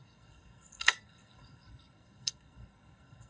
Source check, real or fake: fake